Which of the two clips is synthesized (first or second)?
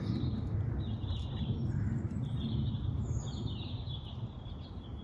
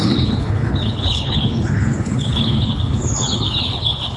second